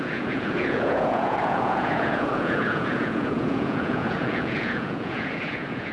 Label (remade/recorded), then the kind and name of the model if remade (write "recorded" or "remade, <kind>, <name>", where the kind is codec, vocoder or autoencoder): remade, vocoder, Vocos